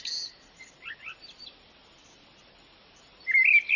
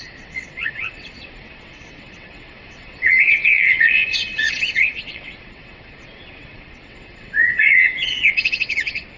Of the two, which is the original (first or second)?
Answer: first